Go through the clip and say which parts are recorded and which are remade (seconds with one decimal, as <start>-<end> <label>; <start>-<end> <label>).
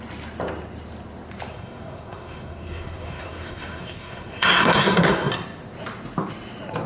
0.0-1.5 recorded; 1.5-5.3 remade; 5.3-6.9 recorded